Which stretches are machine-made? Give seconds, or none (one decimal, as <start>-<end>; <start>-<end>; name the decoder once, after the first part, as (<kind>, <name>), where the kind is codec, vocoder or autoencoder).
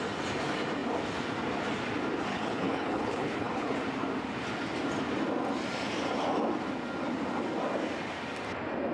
2.3-3.7 (codec, HILCodec)